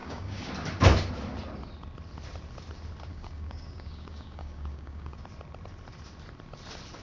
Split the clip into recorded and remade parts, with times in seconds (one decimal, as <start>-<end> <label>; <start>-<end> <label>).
0.0-0.5 remade; 0.5-3.1 recorded; 3.1-5.2 remade; 5.2-7.0 recorded